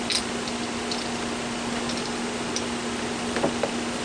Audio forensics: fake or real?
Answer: real